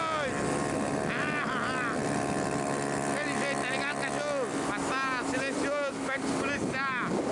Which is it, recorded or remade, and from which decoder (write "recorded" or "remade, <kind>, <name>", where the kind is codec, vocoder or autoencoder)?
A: recorded